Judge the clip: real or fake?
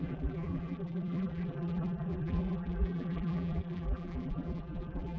fake